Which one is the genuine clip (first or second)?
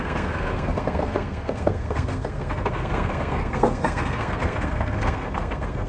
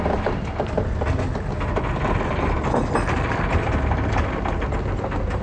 second